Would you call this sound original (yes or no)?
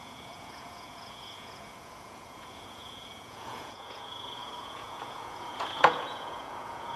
no